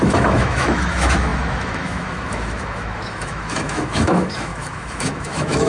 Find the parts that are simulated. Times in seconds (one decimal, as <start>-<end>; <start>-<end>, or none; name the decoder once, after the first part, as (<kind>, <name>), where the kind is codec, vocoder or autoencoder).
0.0-5.7 (autoencoder, DAC-VAE)